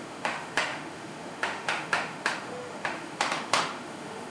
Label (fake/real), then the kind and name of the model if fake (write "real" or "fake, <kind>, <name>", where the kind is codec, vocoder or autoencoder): fake, autoencoder, DAC-VAE